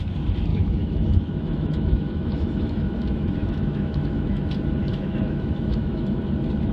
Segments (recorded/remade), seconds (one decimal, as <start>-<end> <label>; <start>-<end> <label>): 0.0-0.5 recorded; 0.5-4.5 remade; 4.5-4.9 recorded; 4.9-6.2 remade; 6.2-6.7 recorded